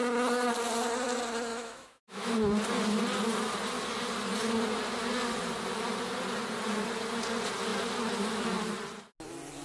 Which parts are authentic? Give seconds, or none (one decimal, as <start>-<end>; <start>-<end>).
0.0-1.5; 2.3-9.6